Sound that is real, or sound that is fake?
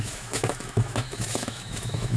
fake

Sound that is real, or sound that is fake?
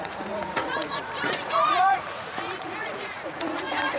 fake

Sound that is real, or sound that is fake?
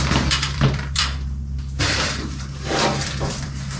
fake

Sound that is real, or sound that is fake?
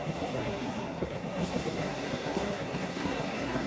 fake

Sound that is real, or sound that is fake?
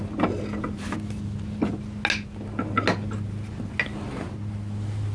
real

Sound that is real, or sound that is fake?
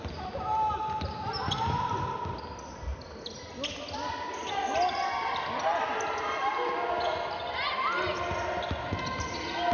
real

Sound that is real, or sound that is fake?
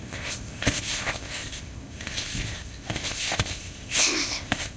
fake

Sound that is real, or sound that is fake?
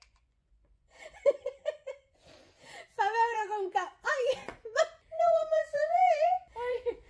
fake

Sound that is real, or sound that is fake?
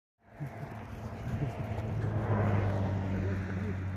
real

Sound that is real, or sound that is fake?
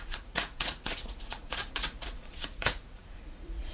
fake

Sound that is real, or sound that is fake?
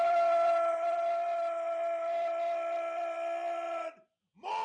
real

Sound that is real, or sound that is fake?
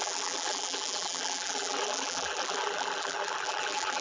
fake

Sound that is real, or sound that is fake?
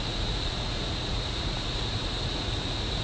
fake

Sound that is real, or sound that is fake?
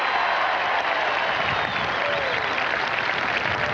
real